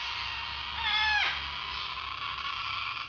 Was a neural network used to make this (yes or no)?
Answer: no